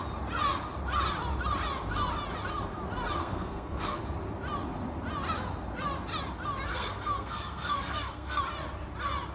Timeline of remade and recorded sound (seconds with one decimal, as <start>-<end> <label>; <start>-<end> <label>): 0.0-3.2 recorded; 3.2-4.0 remade; 4.0-6.7 recorded; 6.7-8.4 remade; 8.4-9.3 recorded